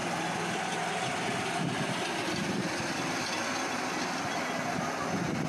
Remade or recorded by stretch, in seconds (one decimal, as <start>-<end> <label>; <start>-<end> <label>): 0.0-5.5 recorded